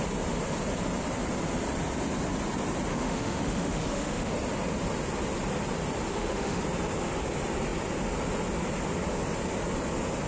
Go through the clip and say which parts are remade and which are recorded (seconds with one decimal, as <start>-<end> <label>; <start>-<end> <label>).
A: 0.0-2.9 recorded; 2.9-4.3 remade; 4.3-6.1 recorded; 6.1-6.6 remade; 6.6-10.3 recorded